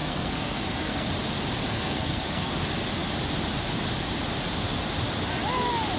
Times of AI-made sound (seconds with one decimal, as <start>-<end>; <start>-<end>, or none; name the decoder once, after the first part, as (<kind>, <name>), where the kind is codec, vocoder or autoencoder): 0.0-1.1 (codec, SNAC); 1.7-2.5